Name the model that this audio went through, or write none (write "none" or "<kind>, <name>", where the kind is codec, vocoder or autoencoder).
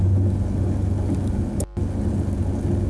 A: none